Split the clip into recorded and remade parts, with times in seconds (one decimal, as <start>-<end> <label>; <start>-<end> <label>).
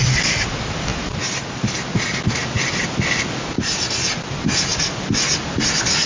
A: 0.0-6.1 recorded